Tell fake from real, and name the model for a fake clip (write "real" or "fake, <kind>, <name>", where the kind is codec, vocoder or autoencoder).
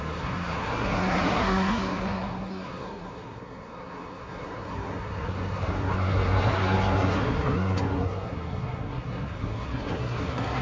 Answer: fake, codec, SNAC